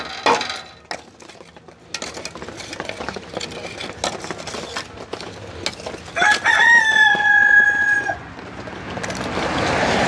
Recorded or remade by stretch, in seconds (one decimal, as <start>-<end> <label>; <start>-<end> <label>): 0.0-7.0 recorded; 7.0-8.3 remade; 8.3-10.1 recorded